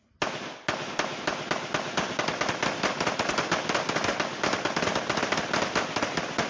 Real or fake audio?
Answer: real